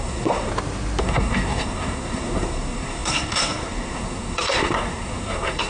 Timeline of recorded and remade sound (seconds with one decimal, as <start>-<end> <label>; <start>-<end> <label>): 0.0-0.5 remade; 0.5-1.0 recorded; 1.0-5.7 remade